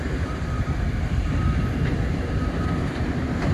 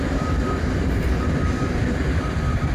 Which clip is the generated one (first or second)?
first